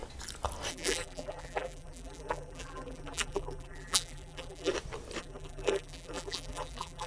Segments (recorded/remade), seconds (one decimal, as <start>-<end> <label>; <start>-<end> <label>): 0.0-0.7 recorded; 0.7-4.7 remade; 4.7-5.2 recorded; 5.2-7.1 remade